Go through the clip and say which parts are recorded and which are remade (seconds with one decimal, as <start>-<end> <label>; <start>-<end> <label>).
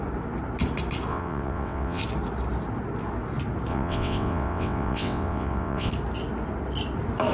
0.0-1.1 recorded; 1.1-2.0 remade; 2.0-3.7 recorded; 3.7-5.9 remade; 5.9-7.3 recorded